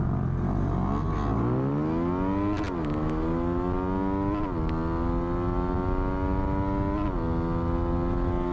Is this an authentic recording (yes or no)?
yes